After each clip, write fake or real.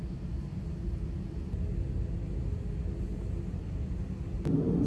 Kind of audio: real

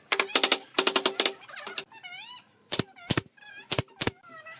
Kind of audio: real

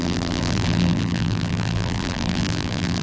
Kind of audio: fake